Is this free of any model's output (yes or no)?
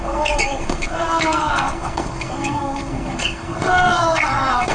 no